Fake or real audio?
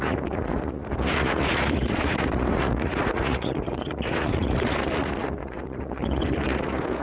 fake